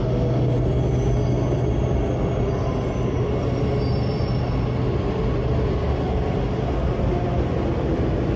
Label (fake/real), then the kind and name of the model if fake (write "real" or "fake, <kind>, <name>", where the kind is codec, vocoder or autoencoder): real